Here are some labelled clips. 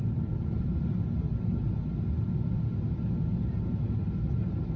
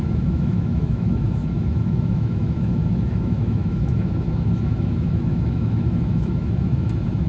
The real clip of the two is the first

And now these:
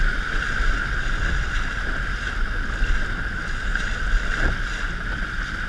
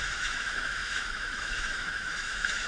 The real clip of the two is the first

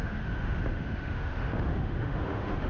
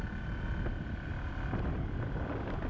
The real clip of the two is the second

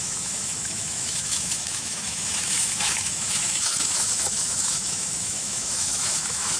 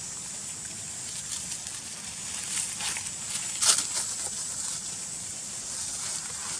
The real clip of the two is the second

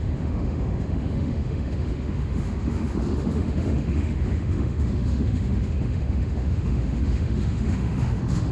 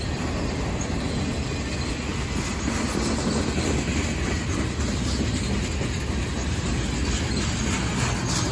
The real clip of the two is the second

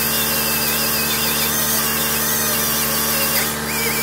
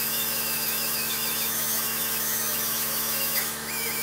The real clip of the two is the first